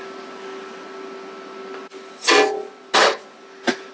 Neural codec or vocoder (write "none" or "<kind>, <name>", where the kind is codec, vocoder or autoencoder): none